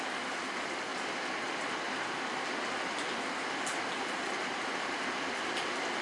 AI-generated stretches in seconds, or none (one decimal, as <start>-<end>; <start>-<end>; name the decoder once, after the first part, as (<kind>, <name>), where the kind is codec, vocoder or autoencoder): none